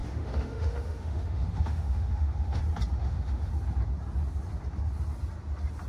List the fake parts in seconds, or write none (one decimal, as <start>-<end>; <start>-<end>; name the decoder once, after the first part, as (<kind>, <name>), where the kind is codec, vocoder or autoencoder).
0.0-2.6 (autoencoder, DAC-VAE); 3.0-3.5